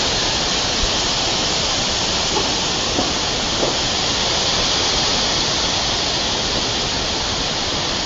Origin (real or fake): real